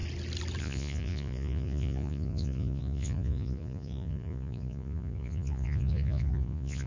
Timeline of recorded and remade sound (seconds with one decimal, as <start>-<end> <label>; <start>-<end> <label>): 0.0-0.6 recorded; 0.6-6.9 remade